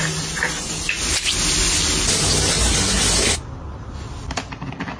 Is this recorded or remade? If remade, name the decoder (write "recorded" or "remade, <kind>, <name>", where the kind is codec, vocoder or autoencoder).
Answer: recorded